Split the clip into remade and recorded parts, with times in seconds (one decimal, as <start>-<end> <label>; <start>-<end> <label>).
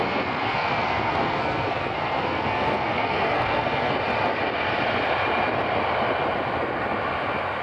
0.0-4.0 remade; 4.0-7.6 recorded